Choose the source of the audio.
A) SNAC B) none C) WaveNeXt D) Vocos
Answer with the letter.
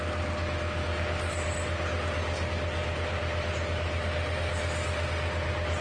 B